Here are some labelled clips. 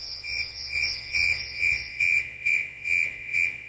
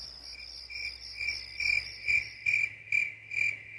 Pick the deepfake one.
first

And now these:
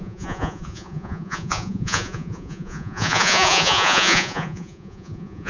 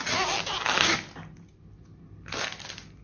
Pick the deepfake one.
first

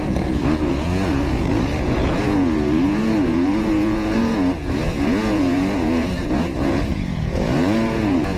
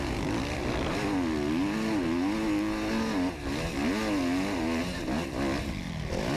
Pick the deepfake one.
first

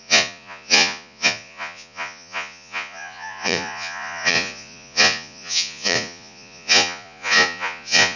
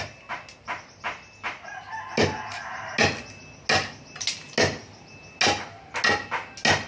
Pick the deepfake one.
first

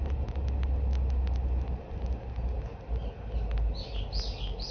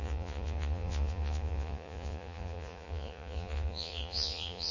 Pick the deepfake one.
second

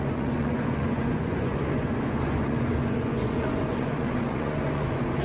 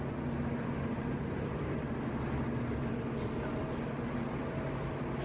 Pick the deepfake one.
first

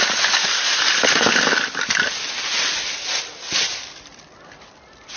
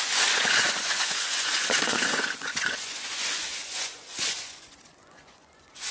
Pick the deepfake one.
second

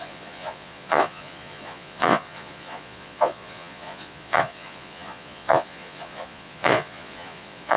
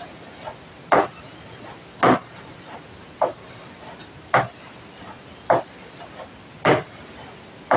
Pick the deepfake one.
first